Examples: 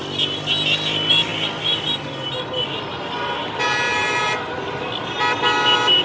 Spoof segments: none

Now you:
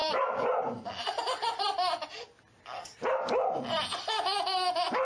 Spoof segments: 0.0-1.2 (vocoder, BigVGAN v2)

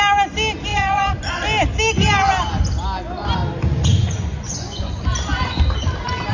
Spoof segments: 0.7-1.3 (vocoder, Vocos); 3.7-5.0

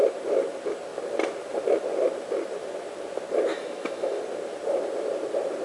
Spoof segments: 3.5-4.2 (autoencoder, DAC-VAE)

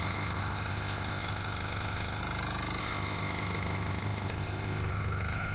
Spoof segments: 0.0-2.2 (codec, ZipCodec); 2.8-5.5